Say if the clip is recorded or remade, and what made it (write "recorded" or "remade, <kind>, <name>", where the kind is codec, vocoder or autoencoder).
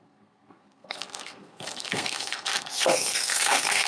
remade, codec, SNAC